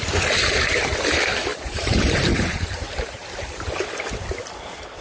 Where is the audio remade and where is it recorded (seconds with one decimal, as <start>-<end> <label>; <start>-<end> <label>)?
0.0-1.5 recorded; 1.5-3.3 remade; 3.3-5.0 recorded